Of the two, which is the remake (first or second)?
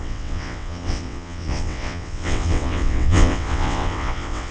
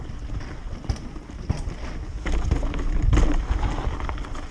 first